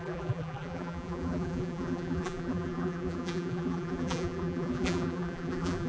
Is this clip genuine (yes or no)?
no